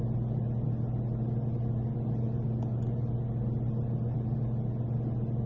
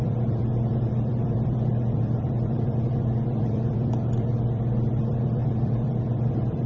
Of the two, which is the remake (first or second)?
second